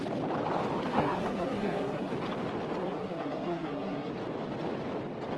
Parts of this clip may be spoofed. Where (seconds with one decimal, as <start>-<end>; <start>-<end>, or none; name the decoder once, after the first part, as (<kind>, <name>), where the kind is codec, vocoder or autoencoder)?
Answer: 0.9-2.1 (codec, SNAC); 2.8-4.1

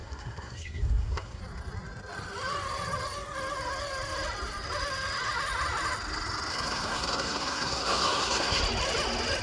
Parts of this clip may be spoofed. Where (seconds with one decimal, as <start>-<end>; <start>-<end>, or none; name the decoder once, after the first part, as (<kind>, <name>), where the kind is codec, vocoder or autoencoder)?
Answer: 0.0-1.4 (codec, SNAC); 6.5-8.6

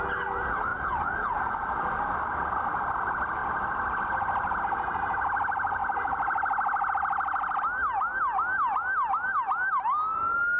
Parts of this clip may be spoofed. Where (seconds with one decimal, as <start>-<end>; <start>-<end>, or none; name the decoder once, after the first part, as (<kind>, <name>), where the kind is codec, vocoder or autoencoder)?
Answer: none

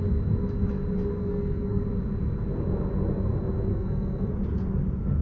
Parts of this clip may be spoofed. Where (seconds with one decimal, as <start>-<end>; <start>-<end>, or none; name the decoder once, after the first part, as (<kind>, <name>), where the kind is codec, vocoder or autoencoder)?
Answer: 1.2-1.8 (codec, SNAC); 3.7-4.3

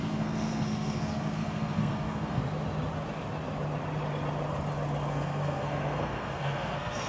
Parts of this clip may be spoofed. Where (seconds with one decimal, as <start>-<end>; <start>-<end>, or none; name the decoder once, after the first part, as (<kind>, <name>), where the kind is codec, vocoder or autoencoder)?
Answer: 0.0-2.4 (codec, SNAC); 5.1-7.1

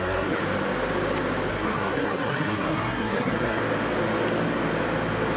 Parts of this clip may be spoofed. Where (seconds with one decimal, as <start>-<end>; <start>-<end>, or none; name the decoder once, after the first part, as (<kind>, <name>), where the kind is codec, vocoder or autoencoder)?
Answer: 0.0-0.4 (codec, SNAC); 1.5-3.6

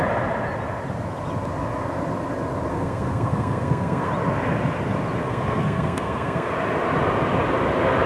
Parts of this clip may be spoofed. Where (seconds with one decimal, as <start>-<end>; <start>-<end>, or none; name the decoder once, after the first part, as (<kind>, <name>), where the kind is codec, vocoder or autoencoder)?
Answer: 2.7-4.1 (codec, SNAC); 5.2-6.5